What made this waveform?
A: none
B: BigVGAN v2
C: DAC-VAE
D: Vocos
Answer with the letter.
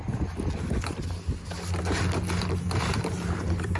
A